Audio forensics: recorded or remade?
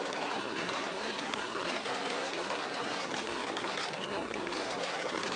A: remade